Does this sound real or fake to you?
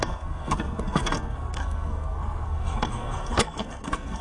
fake